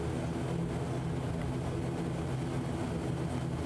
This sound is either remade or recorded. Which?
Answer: recorded